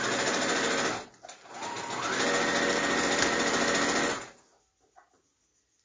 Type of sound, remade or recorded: recorded